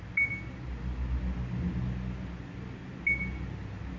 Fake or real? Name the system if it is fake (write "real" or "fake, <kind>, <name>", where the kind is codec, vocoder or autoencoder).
real